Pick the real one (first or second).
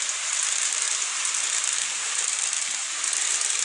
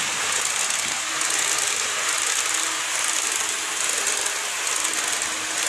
second